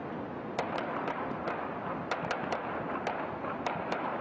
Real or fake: real